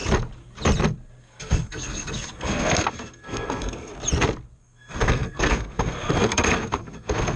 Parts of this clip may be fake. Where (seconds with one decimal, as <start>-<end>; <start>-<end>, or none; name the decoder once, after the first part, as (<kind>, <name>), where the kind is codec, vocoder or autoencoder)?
1.2-3.9 (codec, SNAC); 4.6-7.4